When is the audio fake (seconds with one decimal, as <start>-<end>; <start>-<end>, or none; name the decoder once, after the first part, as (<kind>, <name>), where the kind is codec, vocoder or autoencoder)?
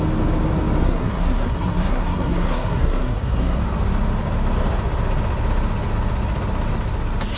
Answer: 0.8-3.6 (codec, SNAC)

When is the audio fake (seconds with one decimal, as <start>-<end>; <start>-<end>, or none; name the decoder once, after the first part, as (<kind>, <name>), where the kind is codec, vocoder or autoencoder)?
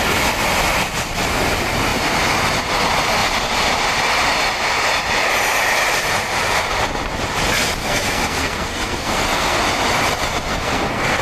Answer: 7.8-9.6 (codec, SNAC); 10.5-11.2